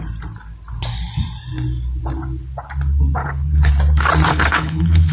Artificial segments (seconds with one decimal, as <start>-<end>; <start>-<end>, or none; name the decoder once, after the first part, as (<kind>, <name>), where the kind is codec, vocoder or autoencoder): 3.2-3.7 (codec, HILCodec); 4.3-5.1